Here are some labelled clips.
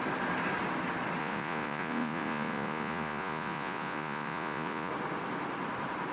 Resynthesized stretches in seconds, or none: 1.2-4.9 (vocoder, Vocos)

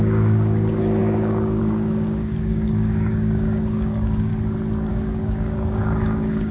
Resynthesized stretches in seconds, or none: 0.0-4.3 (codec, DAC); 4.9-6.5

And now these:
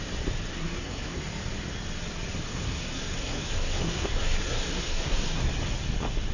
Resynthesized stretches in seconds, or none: 0.5-1.2 (codec, SNAC); 2.5-5.5

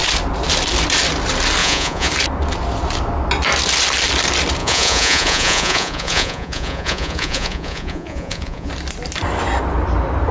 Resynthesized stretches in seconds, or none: 1.6-2.1 (vocoder, Vocos); 4.6-8.7